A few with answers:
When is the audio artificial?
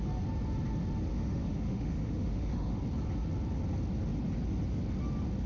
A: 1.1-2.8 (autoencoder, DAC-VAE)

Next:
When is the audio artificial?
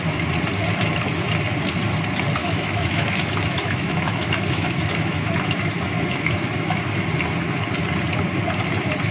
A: 2.4-6.9 (autoencoder, DAC-VAE)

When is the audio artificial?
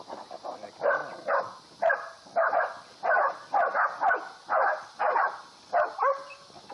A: none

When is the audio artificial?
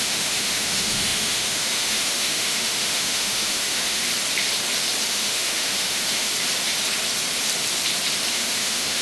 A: 0.0-4.1 (autoencoder, DAC-VAE); 5.1-6.3; 8.3-9.0